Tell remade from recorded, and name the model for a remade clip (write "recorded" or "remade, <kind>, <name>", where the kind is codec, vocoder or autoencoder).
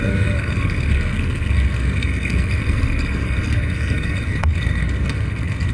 remade, codec, SNAC